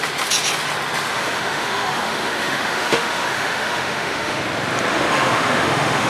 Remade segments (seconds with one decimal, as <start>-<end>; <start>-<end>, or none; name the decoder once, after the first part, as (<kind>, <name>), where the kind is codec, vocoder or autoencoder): 1.1-4.4 (autoencoder, DAC-VAE); 4.9-6.1